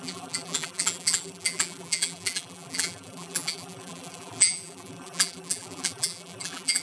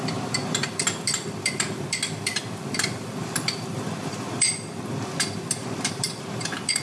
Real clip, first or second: second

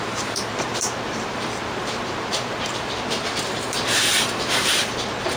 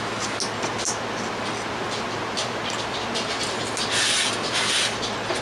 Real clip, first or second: second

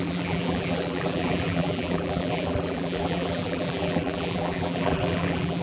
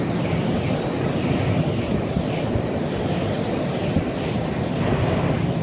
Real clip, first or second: second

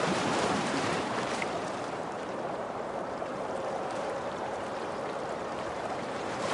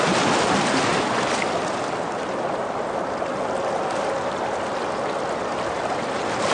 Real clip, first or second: second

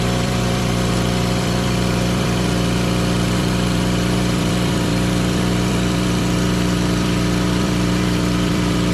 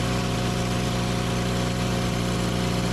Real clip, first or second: second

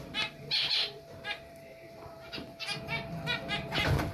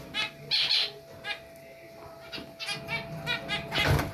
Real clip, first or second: second